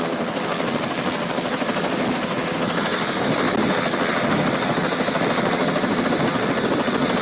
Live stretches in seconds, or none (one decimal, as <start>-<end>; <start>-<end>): 0.0-7.2

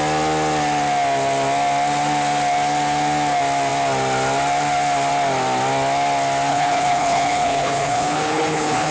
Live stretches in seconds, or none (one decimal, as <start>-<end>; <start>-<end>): 0.0-6.5

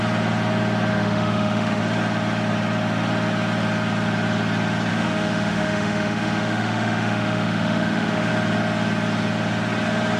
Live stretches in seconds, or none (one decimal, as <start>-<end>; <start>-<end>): 0.0-0.9; 1.8-4.9; 8.3-10.2

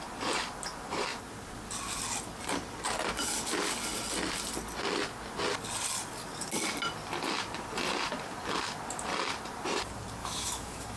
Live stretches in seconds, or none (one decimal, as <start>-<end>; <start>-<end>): 0.0-10.2

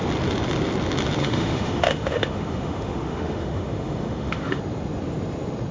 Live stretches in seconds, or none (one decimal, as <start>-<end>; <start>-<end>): 0.0-1.2; 4.6-5.7

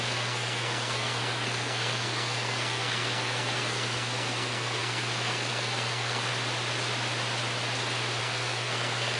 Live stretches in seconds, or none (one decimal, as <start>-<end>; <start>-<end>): 6.3-8.2

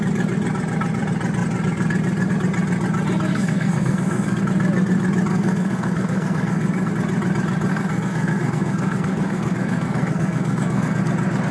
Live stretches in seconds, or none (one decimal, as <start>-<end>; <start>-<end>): 0.0-3.3; 4.4-5.3; 6.9-7.7; 11.0-11.5